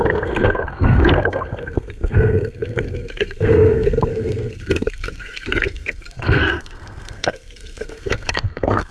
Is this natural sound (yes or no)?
no